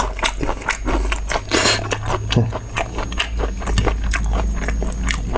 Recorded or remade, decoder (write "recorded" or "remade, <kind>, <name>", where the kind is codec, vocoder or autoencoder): recorded